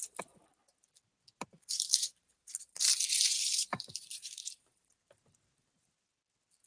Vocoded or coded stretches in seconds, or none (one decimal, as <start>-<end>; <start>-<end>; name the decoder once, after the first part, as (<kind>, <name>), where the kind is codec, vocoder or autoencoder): 1.9-5.9 (vocoder, BigVGAN v2)

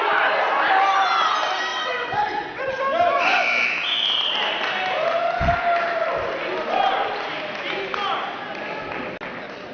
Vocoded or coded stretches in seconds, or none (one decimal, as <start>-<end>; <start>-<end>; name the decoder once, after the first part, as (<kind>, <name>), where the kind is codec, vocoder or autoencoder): 1.7-2.7 (vocoder, WaveNeXt)

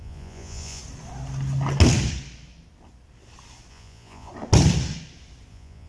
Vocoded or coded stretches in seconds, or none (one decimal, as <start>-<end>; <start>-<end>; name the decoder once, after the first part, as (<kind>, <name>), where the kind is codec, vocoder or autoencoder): 0.0-0.8 (vocoder, Vocos); 3.7-4.3; 5.5-5.9

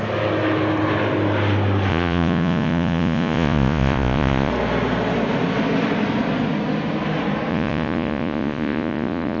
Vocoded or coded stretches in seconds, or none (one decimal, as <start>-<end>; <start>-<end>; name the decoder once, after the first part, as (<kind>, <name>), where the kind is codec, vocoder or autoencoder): 1.9-4.5 (vocoder, Vocos); 7.5-9.4

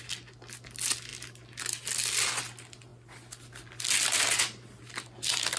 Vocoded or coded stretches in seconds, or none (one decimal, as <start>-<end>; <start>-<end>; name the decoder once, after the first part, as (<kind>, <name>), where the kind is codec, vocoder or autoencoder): none

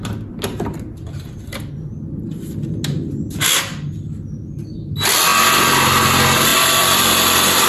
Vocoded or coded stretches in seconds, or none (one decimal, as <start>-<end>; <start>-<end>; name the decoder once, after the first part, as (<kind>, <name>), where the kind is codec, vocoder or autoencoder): 6.5-7.7 (vocoder, BigVGAN v2)

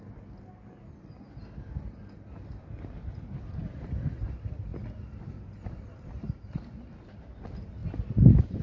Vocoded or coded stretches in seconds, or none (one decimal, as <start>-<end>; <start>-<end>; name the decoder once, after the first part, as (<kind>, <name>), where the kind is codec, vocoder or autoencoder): none